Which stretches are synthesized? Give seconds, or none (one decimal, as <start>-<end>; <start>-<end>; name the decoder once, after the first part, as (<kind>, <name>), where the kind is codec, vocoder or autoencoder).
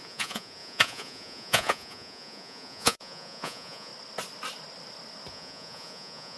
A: 0.0-3.9 (vocoder, Vocos); 5.3-6.4